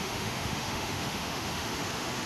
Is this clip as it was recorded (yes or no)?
no